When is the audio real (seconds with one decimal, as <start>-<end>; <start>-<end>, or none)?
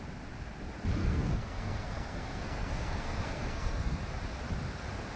0.0-1.0; 4.0-5.2